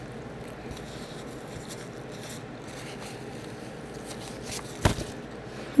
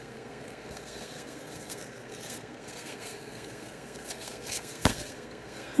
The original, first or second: first